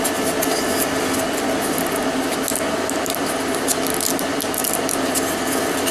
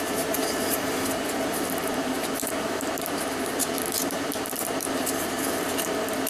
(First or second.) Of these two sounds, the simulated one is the second